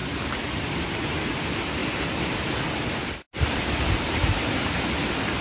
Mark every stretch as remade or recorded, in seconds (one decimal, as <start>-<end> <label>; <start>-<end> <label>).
0.0-5.4 recorded